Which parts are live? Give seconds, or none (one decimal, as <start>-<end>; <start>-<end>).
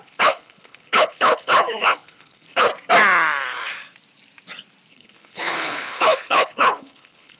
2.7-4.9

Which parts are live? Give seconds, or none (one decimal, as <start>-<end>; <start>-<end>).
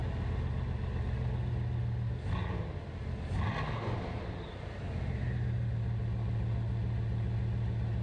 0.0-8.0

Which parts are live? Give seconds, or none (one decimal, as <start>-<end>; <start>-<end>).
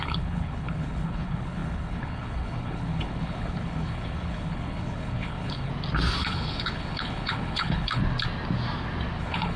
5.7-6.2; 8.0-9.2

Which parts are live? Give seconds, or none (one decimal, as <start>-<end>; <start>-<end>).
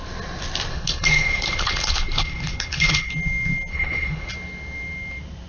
0.0-0.7; 3.1-3.7; 4.3-5.5